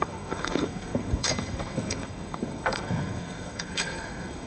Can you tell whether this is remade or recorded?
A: remade